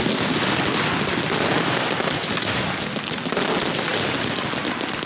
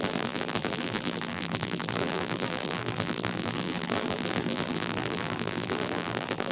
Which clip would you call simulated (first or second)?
second